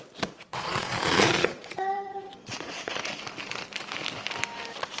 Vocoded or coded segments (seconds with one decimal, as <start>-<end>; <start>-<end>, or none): 0.5-3.1